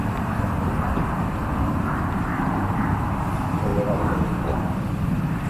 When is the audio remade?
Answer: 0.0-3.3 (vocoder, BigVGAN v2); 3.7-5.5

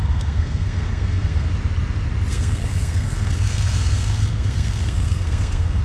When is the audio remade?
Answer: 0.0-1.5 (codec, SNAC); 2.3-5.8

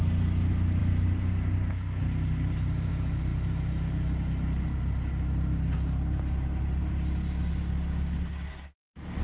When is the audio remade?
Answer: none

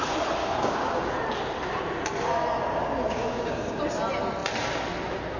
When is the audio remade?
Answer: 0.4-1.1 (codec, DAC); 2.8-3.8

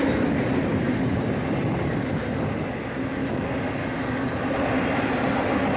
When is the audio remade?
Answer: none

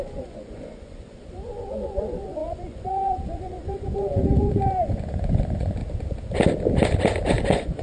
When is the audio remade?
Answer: 0.0-5.8 (vocoder, Vocos); 7.3-7.8

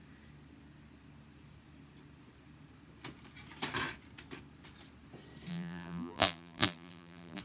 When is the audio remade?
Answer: 5.5-7.4 (vocoder, BigVGAN v2)